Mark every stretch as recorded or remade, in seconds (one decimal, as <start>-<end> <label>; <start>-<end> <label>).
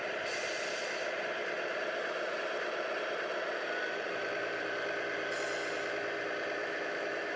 0.0-6.6 recorded; 6.6-7.4 remade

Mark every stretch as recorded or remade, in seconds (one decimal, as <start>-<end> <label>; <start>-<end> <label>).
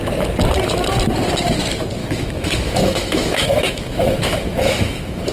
0.0-2.0 recorded; 2.0-5.3 remade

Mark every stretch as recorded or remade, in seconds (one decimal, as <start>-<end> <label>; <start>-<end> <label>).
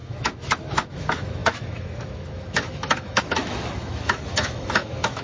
0.0-5.2 remade